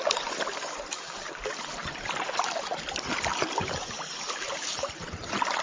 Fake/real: real